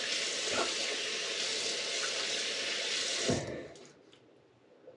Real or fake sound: real